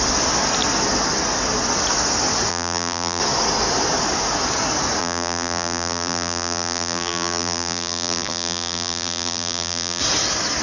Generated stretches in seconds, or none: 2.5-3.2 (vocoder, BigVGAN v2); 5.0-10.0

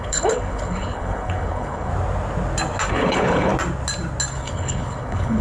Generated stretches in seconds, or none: 0.0-1.9 (codec, HILCodec); 2.9-3.5; 4.3-5.4

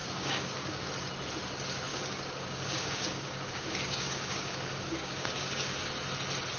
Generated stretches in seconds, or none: 0.0-0.9 (codec, DAC); 1.9-5.9

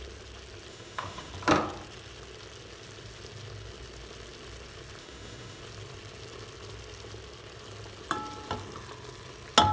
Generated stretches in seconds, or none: 0.7-1.3 (autoencoder, DAC-VAE); 5.0-5.6

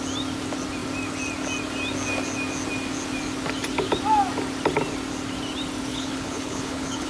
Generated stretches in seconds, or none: 5.9-7.1 (codec, HILCodec)

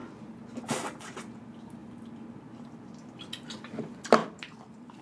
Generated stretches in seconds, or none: 4.2-5.0 (vocoder, BigVGAN v2)

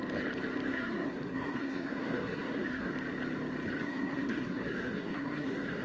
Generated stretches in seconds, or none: 0.7-2.9 (codec, SNAC); 3.8-5.8